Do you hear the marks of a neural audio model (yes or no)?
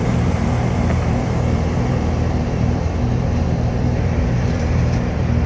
yes